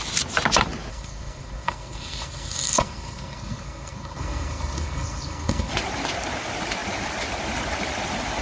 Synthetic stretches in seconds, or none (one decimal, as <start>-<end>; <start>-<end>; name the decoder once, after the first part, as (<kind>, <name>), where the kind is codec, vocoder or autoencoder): 0.9-5.7 (codec, SNAC)